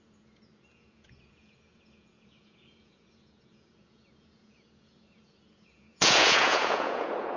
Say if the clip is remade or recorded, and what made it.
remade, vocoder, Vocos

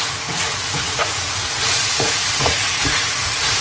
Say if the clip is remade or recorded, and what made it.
remade, vocoder, Vocos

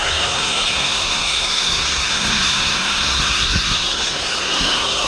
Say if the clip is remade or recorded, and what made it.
remade, codec, SNAC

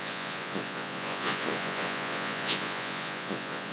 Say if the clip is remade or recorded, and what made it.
remade, vocoder, Vocos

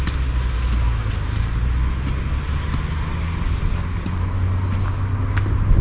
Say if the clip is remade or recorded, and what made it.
recorded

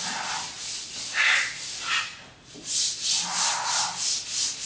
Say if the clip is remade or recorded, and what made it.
recorded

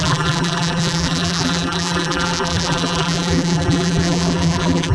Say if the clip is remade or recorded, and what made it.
remade, vocoder, BigVGAN v2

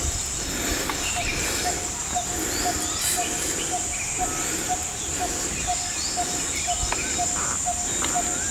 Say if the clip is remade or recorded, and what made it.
recorded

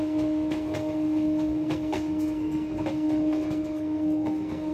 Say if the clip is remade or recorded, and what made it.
remade, codec, SNAC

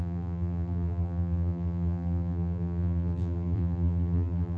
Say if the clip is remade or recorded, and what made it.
remade, vocoder, BigVGAN v2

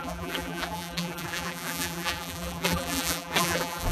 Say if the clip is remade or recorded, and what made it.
remade, vocoder, BigVGAN v2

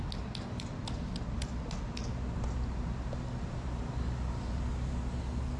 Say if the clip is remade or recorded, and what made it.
recorded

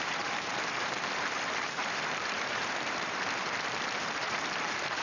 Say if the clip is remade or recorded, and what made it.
remade, vocoder, BigVGAN v2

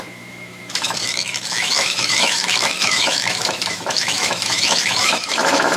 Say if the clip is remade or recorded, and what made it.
remade, autoencoder, DAC-VAE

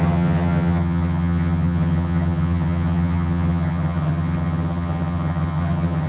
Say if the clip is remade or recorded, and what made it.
remade, vocoder, HiFi-GAN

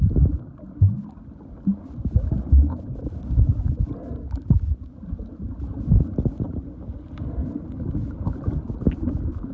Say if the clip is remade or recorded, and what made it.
recorded